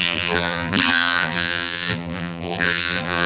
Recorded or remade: remade